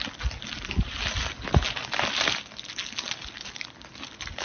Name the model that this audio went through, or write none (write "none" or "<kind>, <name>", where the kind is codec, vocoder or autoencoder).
none